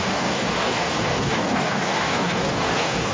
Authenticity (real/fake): fake